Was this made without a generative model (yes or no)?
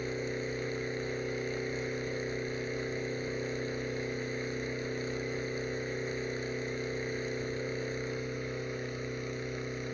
no